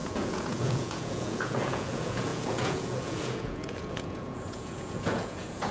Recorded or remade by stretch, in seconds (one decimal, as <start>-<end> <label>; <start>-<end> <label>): 0.0-5.7 remade